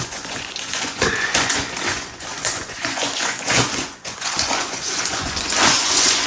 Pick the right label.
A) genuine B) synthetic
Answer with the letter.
B